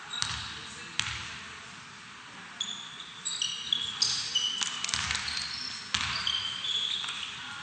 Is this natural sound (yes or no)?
yes